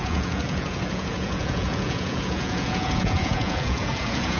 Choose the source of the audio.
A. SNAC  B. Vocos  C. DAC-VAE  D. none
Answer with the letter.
B